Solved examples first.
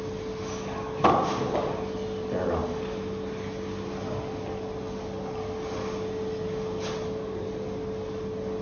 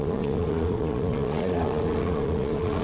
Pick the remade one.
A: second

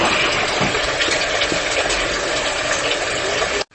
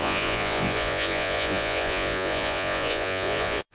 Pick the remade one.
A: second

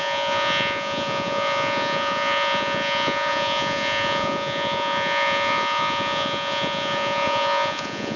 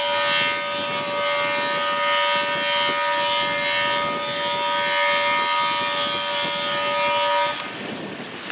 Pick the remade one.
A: first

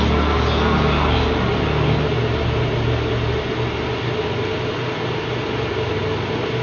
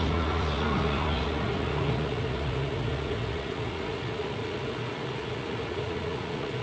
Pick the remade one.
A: second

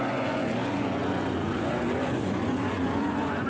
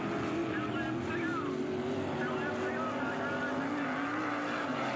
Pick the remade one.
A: first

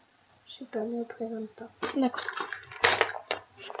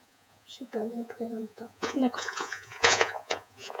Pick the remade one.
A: second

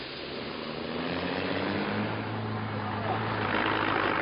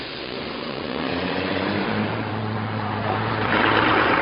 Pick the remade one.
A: second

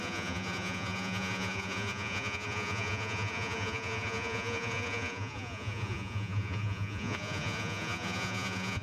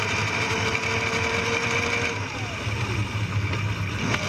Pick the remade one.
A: first